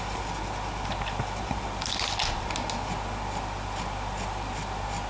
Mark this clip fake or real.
real